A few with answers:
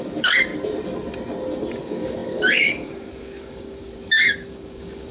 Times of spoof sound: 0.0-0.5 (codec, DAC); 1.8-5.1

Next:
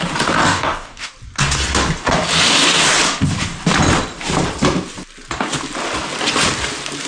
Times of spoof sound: 0.4-1.1 (codec, DAC)

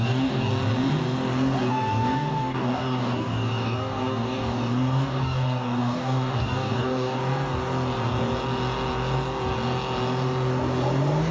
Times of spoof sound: 0.0-0.5 (codec, DAC); 1.7-7.2

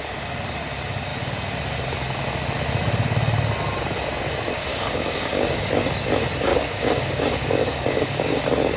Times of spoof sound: 4.7-5.7 (codec, DAC); 6.5-8.4

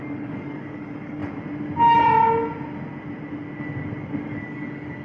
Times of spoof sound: 0.0-1.2 (codec, DAC); 4.2-5.0

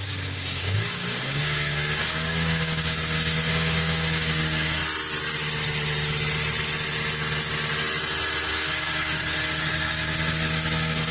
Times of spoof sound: 0.0-4.8 (codec, DAC); 8.5-11.1

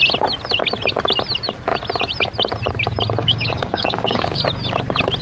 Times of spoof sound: 3.2-4.4 (codec, DAC)